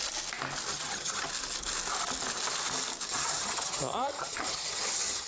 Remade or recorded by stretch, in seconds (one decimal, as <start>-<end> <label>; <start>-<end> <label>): 0.0-0.7 recorded; 0.7-1.3 remade; 1.3-3.1 recorded; 3.1-5.3 remade